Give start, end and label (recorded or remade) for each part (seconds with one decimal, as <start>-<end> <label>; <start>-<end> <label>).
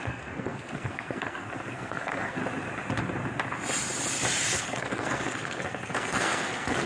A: 0.0-2.4 remade; 2.4-4.6 recorded; 4.6-6.9 remade